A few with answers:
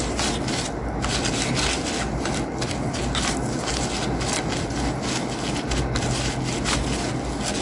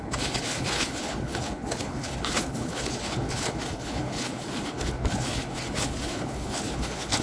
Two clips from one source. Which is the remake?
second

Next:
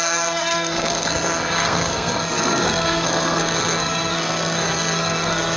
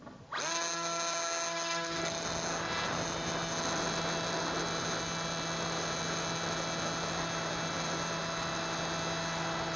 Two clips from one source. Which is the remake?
first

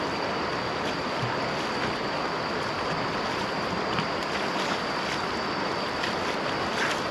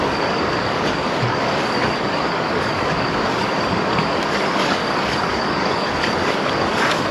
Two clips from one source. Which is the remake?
second